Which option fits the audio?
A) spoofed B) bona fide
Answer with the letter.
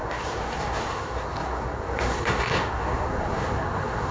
A